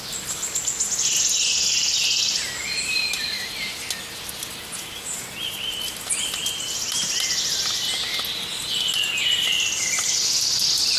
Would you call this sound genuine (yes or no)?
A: yes